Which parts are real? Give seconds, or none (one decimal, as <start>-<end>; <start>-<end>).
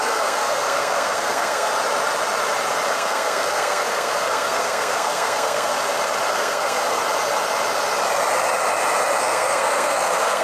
1.7-2.9; 5.7-6.3; 7.0-9.2